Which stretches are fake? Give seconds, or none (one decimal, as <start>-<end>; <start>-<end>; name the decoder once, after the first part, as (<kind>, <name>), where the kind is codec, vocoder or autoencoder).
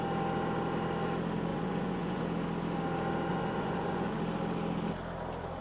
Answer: 1.5-2.2 (vocoder, Vocos); 3.3-4.2